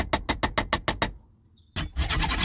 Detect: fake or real real